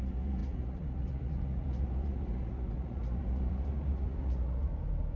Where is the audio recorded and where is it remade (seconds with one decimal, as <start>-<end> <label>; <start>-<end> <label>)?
0.0-4.7 remade; 4.7-5.2 recorded